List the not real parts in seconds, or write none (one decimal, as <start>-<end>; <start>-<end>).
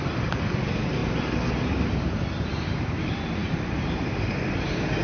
0.0-1.0; 1.7-5.0